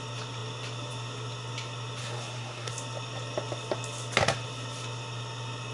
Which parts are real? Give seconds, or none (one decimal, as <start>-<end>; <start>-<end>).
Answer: 0.0-2.0; 2.7-5.7